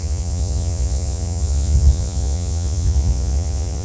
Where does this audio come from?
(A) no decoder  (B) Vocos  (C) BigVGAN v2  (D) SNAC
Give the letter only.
B